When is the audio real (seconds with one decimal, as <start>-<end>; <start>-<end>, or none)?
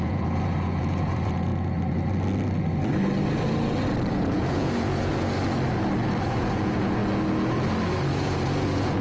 1.5-4.1; 5.1-6.2; 7.0-8.1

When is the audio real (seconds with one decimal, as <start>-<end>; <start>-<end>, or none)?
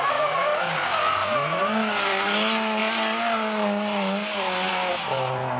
0.0-5.6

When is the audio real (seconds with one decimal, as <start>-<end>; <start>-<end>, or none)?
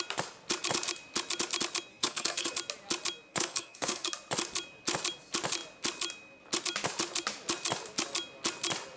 0.0-1.9; 2.5-3.3; 4.1-9.0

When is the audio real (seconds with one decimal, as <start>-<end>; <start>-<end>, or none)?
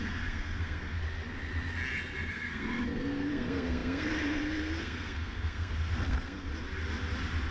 1.0-2.3; 6.5-7.5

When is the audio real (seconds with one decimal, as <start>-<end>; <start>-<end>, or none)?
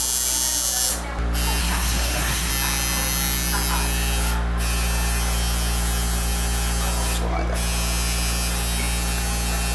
0.0-1.6; 2.5-9.7